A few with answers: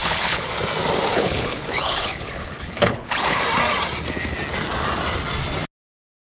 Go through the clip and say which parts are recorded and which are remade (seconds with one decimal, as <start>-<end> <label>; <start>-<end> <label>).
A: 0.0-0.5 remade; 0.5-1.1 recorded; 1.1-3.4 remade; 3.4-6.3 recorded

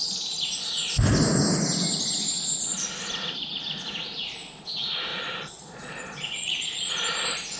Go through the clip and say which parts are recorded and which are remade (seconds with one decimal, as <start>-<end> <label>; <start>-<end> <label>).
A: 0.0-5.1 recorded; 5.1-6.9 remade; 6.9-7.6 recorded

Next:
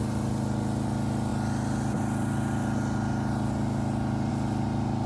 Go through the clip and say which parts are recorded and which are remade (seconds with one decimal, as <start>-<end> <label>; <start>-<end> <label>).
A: 0.0-5.1 recorded

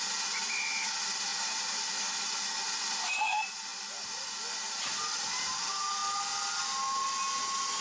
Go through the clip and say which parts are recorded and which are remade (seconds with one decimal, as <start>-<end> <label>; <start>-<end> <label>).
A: 0.0-7.8 recorded

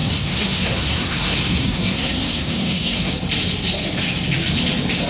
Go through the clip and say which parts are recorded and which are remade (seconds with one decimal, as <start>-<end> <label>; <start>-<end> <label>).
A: 0.0-3.1 remade; 3.1-5.1 recorded